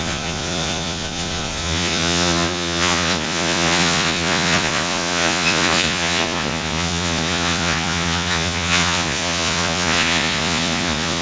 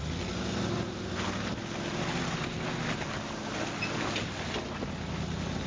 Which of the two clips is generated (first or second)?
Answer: first